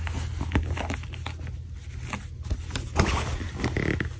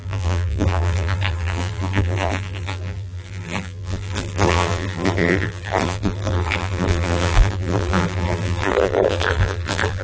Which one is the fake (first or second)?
second